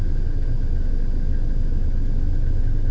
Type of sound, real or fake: real